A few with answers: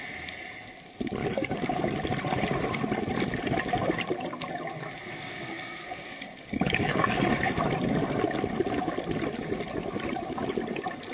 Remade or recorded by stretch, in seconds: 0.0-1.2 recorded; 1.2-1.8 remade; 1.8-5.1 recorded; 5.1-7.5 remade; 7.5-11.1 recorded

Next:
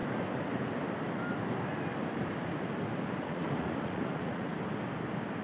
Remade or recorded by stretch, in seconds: 0.0-3.2 recorded; 3.2-4.5 remade; 4.5-5.4 recorded

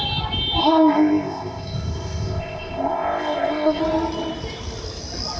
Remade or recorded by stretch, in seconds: 0.0-0.6 recorded; 0.6-3.8 remade; 3.8-5.4 recorded

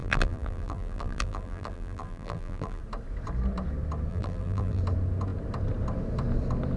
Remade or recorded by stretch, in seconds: 0.0-2.8 remade; 2.8-4.1 recorded; 4.1-4.8 remade; 4.8-6.8 recorded